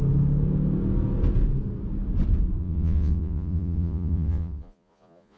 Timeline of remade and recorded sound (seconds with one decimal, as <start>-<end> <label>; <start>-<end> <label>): 0.0-2.6 recorded; 2.6-5.4 remade